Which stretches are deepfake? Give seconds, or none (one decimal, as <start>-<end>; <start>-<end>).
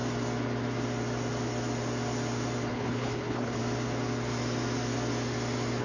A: 2.7-3.6